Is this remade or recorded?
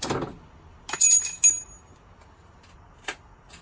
recorded